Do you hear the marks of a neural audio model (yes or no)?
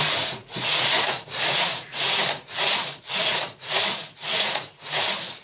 yes